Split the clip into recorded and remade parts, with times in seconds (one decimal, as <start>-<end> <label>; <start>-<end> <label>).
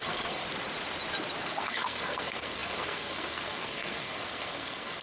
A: 0.0-0.4 remade; 0.4-1.4 recorded; 1.4-5.0 remade